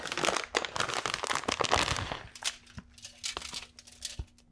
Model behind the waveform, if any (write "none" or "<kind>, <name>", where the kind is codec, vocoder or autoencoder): none